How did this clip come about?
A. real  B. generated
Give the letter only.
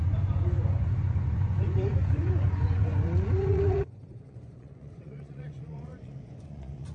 B